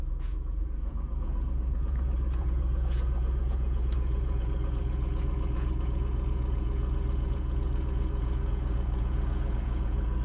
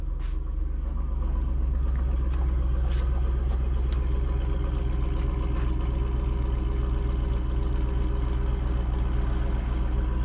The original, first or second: second